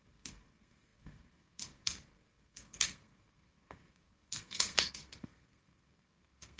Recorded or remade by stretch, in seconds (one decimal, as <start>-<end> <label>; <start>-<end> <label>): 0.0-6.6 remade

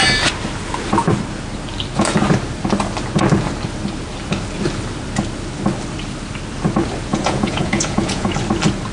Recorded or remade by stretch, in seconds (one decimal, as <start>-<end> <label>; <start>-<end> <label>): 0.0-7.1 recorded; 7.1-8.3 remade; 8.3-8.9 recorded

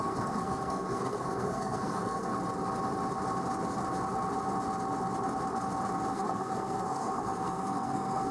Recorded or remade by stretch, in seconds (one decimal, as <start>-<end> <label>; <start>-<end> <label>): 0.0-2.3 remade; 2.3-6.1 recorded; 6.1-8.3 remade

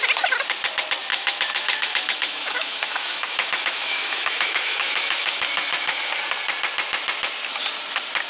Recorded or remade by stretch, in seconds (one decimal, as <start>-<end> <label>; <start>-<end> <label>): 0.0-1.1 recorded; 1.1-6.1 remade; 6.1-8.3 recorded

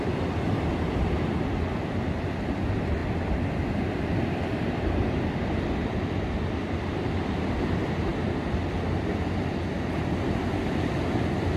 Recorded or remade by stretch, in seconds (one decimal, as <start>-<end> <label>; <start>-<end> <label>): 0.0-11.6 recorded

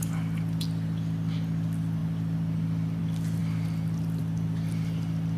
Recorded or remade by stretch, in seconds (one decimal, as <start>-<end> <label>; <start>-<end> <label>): 0.0-5.4 recorded